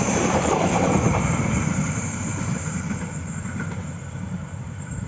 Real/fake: fake